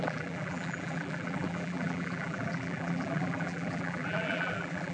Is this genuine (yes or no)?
no